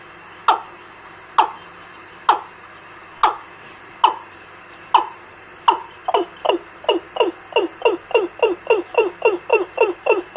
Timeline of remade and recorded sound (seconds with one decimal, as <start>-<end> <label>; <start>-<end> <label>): 0.0-10.4 recorded